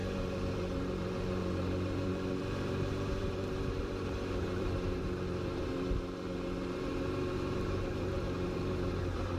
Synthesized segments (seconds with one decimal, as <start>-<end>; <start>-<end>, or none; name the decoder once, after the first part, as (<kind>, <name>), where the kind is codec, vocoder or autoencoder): 0.0-9.4 (vocoder, BigVGAN v2)